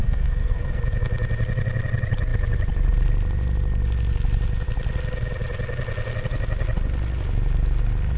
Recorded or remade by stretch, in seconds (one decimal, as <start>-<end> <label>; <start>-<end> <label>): 0.0-0.8 remade; 0.8-8.2 recorded